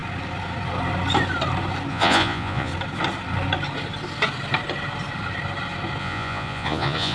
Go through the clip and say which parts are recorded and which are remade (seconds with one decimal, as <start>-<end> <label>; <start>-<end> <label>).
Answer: 0.0-1.9 recorded; 1.9-2.7 remade; 2.7-6.0 recorded; 6.0-7.1 remade